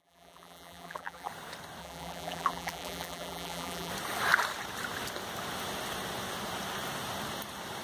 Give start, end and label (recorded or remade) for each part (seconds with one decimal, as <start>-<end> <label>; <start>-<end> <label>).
0.0-1.3 remade; 1.3-1.8 recorded; 1.8-3.9 remade; 3.9-7.8 recorded